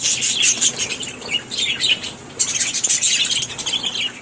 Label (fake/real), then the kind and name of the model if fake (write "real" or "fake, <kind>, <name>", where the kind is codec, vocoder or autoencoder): real